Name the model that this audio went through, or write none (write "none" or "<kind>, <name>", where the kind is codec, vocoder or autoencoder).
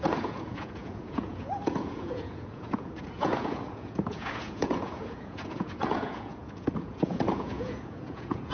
vocoder, Vocos